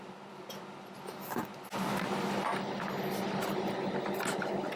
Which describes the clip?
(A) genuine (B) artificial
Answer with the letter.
A